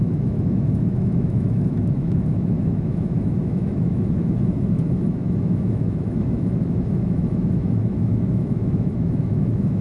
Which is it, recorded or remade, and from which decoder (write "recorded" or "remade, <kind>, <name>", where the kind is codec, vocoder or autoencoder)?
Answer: remade, autoencoder, DAC-VAE